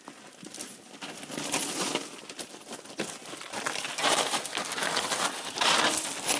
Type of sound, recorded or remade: recorded